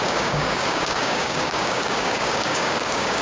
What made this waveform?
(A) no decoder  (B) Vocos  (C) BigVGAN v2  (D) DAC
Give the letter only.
D